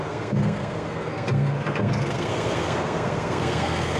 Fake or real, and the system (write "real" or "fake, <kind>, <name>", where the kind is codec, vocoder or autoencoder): fake, codec, SNAC